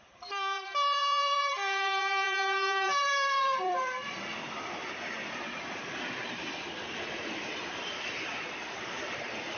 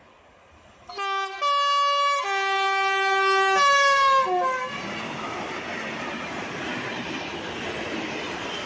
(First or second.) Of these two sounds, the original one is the second